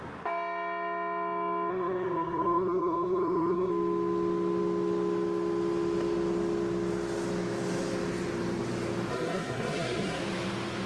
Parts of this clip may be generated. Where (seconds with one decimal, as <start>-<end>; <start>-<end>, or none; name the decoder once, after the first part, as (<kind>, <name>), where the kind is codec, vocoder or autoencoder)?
1.7-3.7 (codec, SNAC); 9.1-10.2